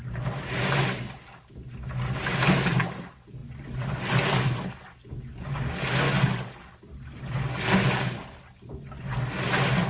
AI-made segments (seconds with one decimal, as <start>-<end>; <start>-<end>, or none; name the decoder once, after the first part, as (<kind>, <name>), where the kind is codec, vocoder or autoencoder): none